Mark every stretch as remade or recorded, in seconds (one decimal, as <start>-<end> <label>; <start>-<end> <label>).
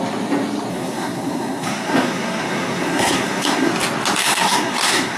0.0-0.7 recorded; 0.7-3.7 remade; 3.7-4.2 recorded; 4.2-5.2 remade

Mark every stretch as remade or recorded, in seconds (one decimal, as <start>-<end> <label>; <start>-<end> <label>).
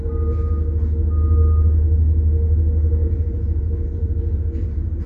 0.0-3.0 recorded; 3.0-5.1 remade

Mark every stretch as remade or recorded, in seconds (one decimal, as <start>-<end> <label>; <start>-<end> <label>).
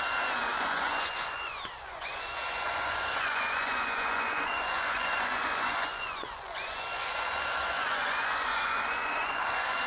0.0-9.9 remade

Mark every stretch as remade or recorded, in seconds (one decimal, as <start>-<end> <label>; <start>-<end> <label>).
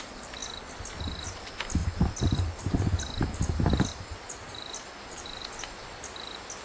0.0-3.9 recorded; 3.9-5.4 remade; 5.4-6.6 recorded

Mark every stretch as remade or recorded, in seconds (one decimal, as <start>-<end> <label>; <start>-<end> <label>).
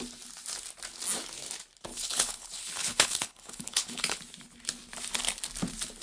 0.0-1.9 recorded; 1.9-4.2 remade; 4.2-6.0 recorded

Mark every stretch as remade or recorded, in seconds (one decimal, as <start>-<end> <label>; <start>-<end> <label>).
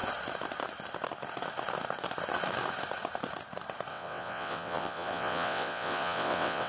0.0-3.9 recorded; 3.9-6.7 remade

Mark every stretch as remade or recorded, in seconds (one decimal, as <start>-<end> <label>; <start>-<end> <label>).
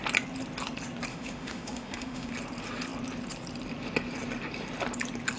0.0-1.1 recorded; 1.1-2.3 remade; 2.3-5.4 recorded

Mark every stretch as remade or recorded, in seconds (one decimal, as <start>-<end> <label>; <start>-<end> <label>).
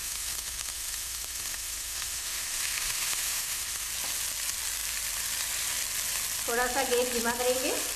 0.0-3.9 remade; 3.9-8.0 recorded